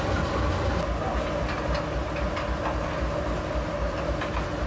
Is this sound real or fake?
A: real